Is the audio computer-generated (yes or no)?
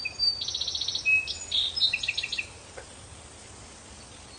no